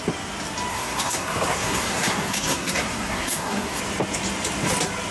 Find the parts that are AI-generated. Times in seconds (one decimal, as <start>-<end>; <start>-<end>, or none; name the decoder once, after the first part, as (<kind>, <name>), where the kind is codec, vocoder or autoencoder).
0.7-3.8 (codec, SNAC)